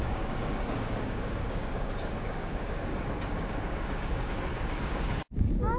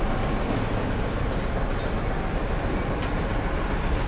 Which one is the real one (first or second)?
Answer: second